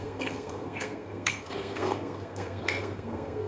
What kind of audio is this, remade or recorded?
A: remade